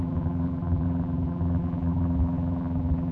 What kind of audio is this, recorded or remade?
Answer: remade